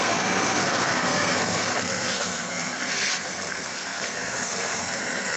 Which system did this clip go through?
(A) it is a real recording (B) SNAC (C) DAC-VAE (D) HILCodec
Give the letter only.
B